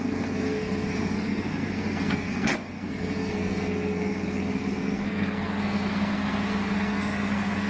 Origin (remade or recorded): remade